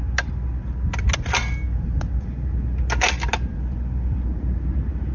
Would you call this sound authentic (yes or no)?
yes